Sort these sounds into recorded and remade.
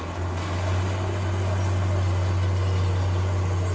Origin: recorded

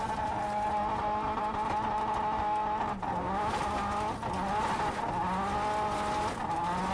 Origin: recorded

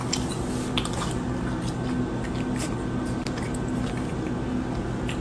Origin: recorded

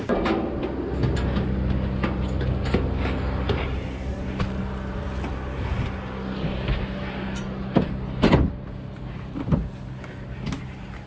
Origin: recorded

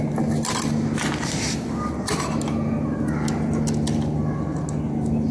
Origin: recorded